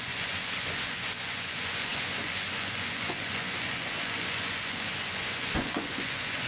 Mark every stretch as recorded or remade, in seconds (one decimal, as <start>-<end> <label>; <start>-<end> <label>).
0.0-6.5 remade